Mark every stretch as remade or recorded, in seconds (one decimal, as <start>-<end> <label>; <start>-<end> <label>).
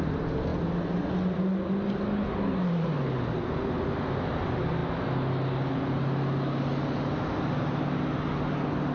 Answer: 0.0-8.9 recorded